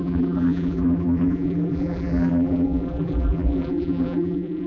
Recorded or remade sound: remade